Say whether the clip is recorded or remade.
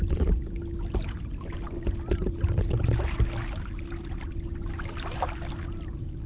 recorded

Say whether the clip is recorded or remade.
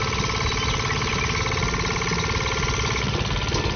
recorded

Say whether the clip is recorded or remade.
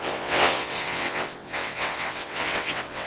remade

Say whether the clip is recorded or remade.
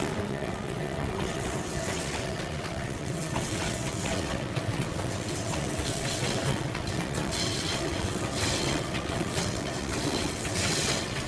remade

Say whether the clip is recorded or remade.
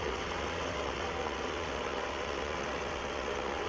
remade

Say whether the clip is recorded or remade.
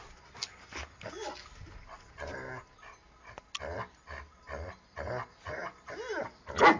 recorded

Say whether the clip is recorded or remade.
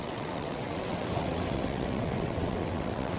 remade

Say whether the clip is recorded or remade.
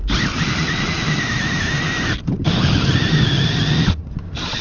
recorded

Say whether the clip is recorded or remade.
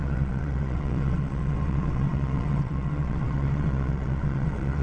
remade